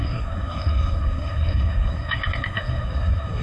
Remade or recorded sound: remade